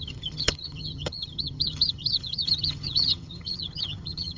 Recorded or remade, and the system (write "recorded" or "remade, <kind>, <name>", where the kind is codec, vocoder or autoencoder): remade, vocoder, HiFi-GAN